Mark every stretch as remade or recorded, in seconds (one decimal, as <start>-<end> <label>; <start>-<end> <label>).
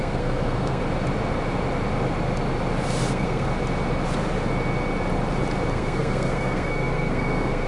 0.0-0.8 remade; 0.8-3.1 recorded; 3.1-3.5 remade; 3.5-5.7 recorded; 5.7-7.7 remade